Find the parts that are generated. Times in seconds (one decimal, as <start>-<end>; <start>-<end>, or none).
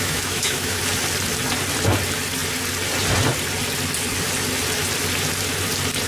0.0-0.8